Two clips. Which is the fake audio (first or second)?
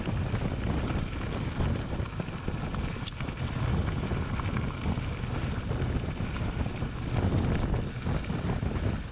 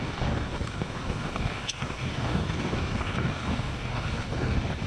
second